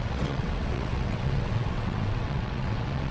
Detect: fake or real fake